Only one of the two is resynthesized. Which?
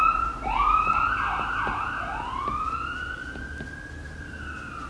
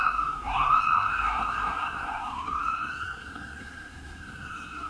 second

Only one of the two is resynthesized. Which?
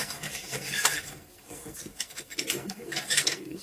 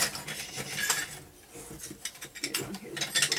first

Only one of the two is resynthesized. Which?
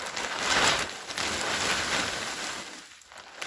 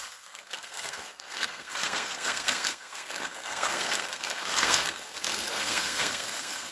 second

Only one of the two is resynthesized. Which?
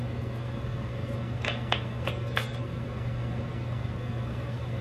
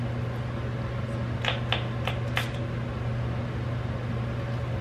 first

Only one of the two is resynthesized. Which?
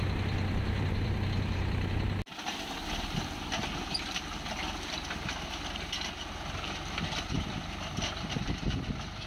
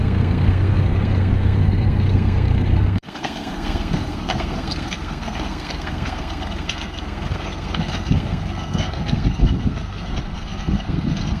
second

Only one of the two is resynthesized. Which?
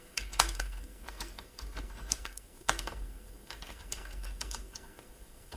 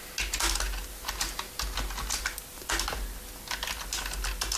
first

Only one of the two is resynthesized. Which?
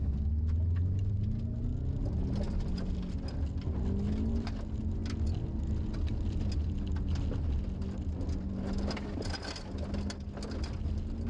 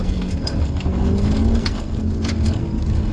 second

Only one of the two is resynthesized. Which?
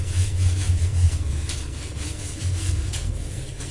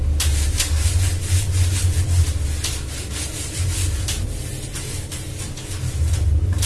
first